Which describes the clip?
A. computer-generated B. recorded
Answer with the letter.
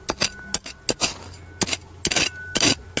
B